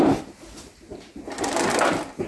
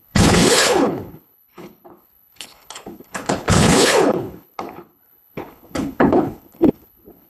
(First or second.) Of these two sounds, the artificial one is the second